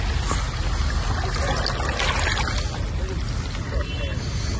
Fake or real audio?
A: real